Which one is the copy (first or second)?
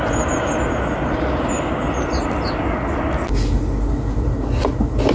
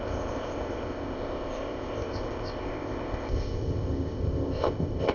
second